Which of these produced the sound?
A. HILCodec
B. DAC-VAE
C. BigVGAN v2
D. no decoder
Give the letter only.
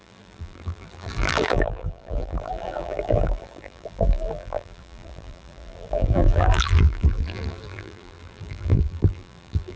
C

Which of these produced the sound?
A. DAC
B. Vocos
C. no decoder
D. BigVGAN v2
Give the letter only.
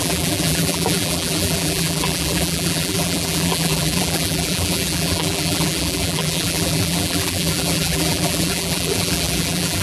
D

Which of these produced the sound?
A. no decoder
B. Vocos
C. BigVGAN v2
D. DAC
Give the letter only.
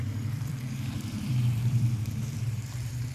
C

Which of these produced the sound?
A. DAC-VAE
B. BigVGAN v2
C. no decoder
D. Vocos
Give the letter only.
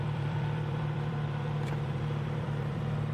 B